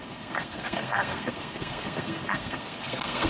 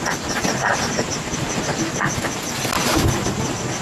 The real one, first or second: second